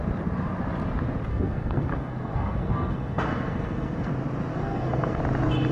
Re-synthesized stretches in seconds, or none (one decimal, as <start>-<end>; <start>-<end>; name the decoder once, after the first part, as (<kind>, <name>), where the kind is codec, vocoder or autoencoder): 1.3-4.1 (codec, SNAC); 4.5-5.2